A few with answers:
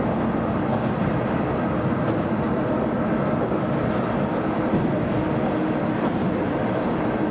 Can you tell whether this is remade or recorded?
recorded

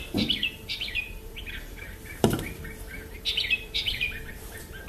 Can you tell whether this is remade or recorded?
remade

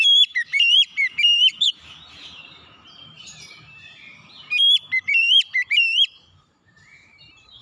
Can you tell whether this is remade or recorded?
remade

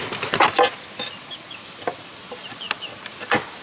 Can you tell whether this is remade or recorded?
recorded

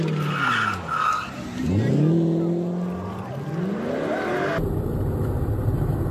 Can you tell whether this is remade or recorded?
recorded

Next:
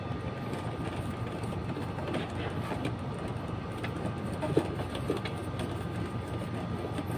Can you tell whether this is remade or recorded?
recorded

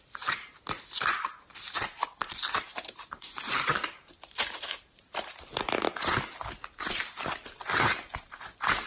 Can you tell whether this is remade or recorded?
remade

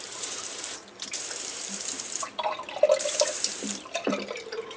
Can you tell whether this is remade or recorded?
remade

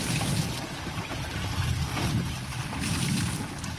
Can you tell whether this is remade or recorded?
recorded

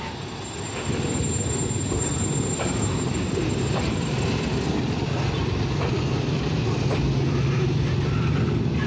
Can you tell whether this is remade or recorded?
remade